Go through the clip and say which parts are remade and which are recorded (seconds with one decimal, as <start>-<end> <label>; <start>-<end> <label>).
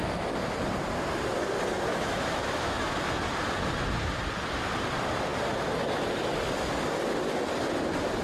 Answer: 0.0-1.9 recorded; 1.9-3.1 remade; 3.1-8.2 recorded